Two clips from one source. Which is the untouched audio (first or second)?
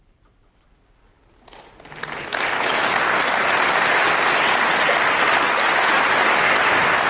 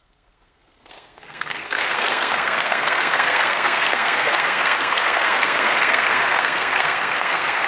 first